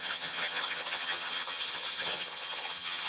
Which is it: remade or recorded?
remade